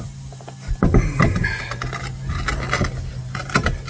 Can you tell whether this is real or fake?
real